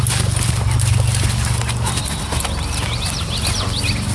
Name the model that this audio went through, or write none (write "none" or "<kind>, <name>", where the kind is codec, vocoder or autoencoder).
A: none